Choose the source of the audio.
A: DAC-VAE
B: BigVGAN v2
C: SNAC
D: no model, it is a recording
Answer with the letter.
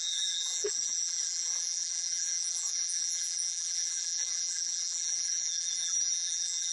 B